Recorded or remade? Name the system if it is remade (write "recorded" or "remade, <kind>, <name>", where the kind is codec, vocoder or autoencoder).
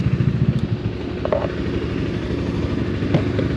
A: recorded